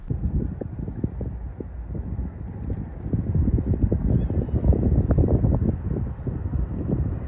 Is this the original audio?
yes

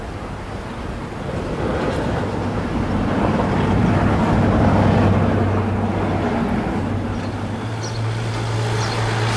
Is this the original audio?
yes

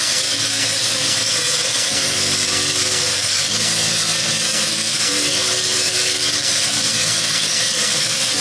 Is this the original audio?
no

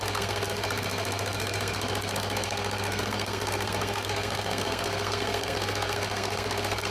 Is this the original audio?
no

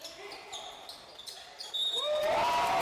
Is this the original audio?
yes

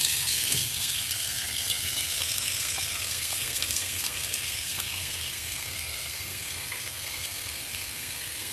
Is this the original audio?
no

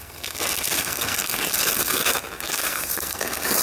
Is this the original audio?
no